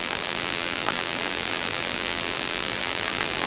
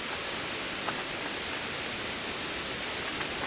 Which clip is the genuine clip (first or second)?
second